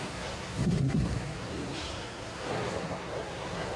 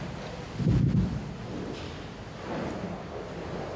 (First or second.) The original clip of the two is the second